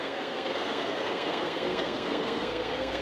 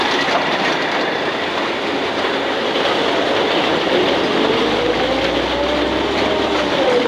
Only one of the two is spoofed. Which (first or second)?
first